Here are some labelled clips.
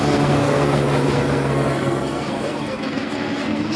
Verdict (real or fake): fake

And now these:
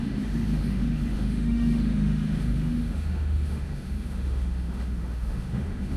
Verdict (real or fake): fake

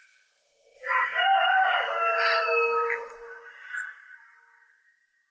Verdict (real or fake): real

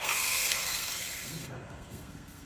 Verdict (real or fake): fake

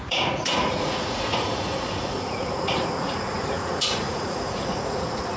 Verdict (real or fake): fake